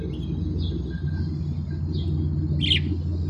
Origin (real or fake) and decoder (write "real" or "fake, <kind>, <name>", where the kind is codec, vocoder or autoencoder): real